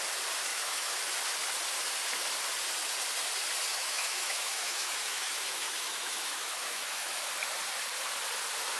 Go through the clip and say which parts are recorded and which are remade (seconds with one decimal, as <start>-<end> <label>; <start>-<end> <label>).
0.0-0.5 recorded; 0.5-1.0 remade; 1.0-3.7 recorded; 3.7-7.3 remade; 7.3-8.8 recorded